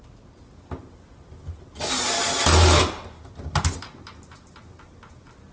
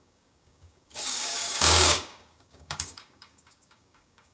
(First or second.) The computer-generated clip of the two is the second